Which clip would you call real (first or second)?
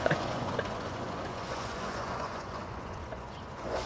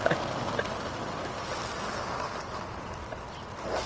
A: second